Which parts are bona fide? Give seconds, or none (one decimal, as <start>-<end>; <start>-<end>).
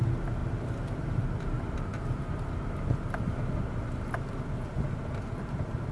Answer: 0.0-5.9